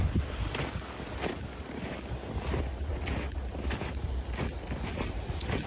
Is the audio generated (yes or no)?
no